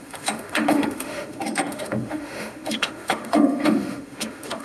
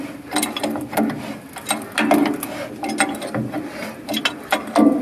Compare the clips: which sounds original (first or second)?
second